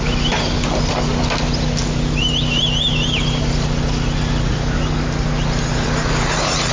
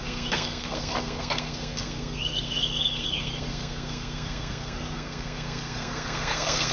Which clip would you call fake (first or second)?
second